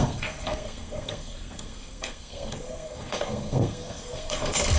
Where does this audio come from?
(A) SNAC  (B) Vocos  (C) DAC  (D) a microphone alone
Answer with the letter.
A